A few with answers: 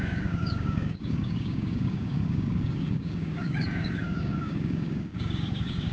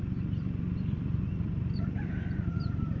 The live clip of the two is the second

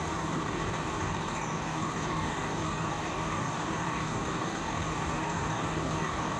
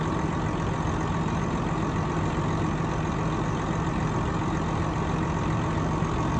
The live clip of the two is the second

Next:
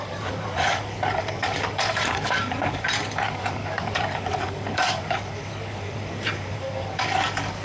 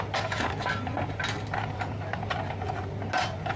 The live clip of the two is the second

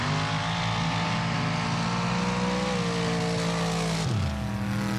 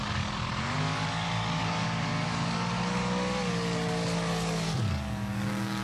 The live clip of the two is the first